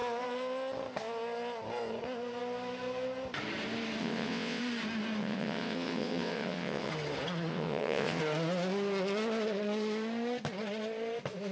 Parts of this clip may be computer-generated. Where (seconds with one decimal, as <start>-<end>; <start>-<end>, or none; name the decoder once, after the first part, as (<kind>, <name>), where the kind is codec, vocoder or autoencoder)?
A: 4.0-4.6 (vocoder, WaveNeXt); 5.2-6.9; 7.5-8.2